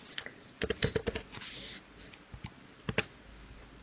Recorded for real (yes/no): yes